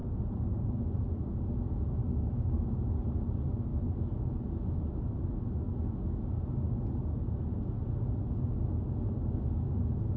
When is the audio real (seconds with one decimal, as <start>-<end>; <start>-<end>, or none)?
0.0-2.0; 2.7-10.2